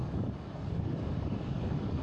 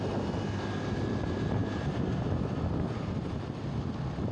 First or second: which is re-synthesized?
first